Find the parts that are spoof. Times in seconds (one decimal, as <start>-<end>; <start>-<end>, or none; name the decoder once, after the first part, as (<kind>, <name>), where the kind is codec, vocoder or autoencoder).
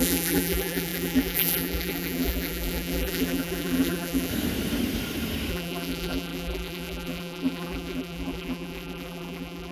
0.0-4.3 (vocoder, BigVGAN v2); 5.5-9.7